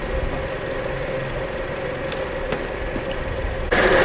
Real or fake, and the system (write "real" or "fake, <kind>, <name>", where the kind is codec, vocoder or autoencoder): real